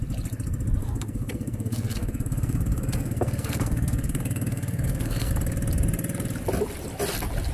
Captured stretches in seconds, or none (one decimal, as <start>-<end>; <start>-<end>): 0.0-0.8; 5.3-7.5